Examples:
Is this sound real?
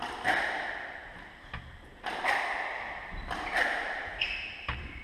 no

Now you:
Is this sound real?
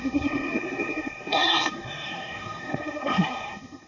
no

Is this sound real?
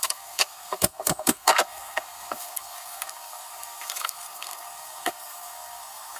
no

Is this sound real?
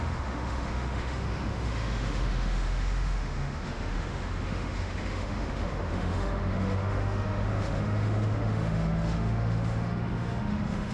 no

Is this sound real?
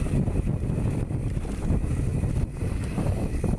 yes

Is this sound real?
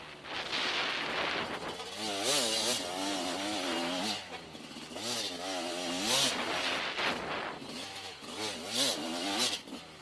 yes